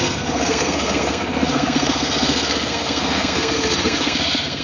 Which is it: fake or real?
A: fake